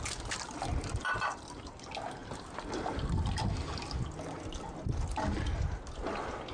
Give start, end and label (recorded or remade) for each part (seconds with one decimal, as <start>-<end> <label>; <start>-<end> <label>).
0.0-1.0 recorded; 1.0-1.6 remade; 1.6-2.2 recorded; 2.2-3.4 remade; 3.4-6.5 recorded